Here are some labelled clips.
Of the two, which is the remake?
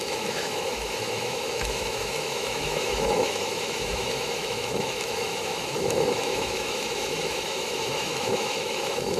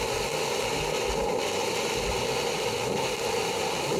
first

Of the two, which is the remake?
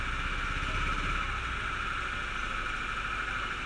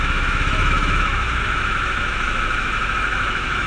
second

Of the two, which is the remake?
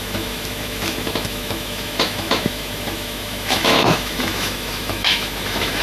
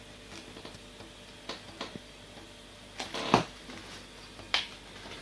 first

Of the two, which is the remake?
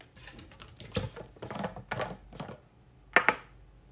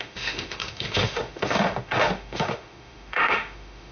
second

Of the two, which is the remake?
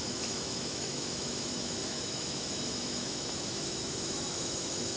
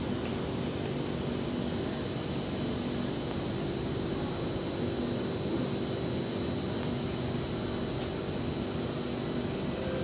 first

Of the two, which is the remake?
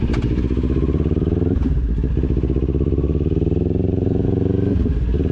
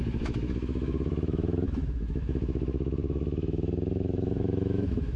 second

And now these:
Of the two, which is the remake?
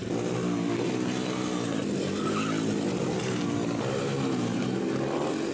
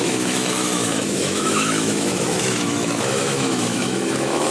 second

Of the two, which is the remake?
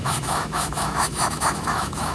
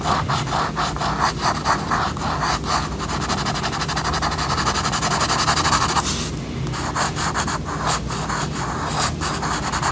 first